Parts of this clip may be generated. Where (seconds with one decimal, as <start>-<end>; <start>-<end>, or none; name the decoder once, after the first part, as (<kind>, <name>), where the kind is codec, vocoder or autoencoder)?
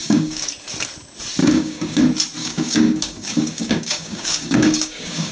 0.0-0.5 (codec, DAC); 1.4-2.0; 2.4-5.3